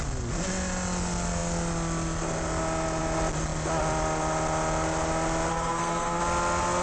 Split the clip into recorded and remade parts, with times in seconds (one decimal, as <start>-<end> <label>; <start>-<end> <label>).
0.0-5.5 recorded; 5.5-6.2 remade; 6.2-6.8 recorded